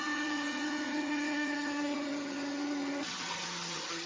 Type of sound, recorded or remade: remade